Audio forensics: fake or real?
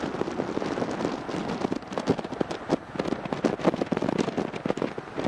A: real